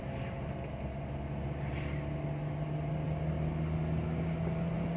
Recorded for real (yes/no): yes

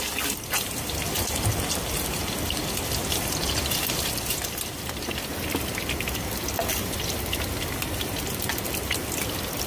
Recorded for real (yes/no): yes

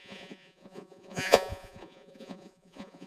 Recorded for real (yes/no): no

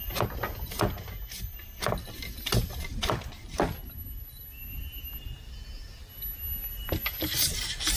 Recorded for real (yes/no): yes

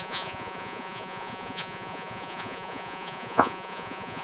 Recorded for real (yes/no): no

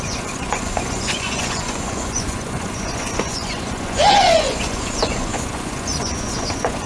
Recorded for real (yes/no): no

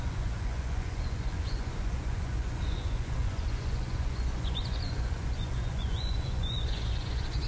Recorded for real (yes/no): no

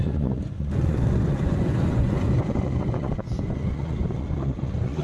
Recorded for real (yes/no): no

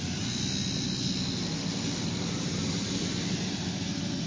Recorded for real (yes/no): yes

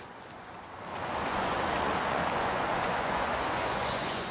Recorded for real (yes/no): no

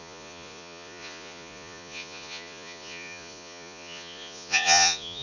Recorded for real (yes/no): no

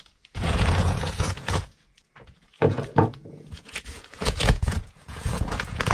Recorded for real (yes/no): no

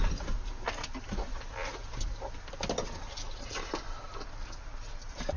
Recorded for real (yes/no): yes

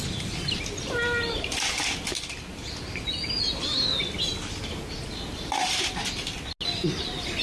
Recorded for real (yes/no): yes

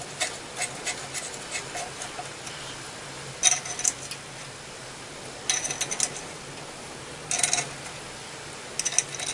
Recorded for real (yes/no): yes